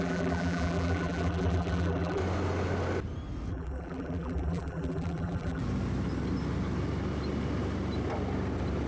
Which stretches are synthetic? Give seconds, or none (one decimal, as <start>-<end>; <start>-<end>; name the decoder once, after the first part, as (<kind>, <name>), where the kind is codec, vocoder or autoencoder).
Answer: 0.0-2.2 (vocoder, BigVGAN v2); 3.5-5.6